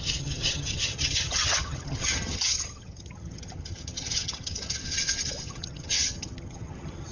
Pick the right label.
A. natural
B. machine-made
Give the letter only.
B